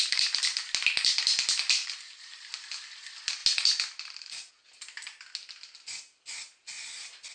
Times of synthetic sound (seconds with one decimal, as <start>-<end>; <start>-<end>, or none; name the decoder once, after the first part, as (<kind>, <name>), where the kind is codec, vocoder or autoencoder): 1.8-2.5 (vocoder, BigVGAN v2)